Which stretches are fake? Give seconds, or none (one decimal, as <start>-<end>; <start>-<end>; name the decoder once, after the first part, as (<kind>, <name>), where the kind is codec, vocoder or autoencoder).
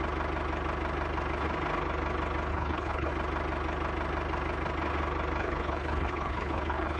2.5-3.1 (codec, HILCodec); 5.4-7.0